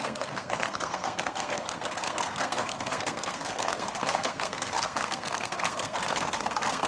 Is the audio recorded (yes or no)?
no